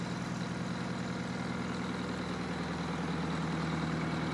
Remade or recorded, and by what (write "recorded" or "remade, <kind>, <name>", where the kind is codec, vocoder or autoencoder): recorded